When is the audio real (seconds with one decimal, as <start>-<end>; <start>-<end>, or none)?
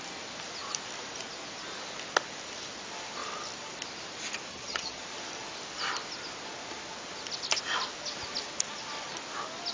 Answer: 0.0-4.5; 5.0-9.7